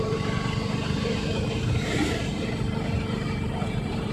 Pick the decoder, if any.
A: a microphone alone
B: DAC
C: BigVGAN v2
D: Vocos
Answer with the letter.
C